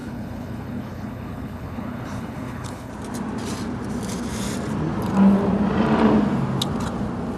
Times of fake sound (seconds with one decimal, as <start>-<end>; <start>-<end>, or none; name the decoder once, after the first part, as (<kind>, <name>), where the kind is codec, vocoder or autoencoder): 0.0-2.9 (codec, HILCodec)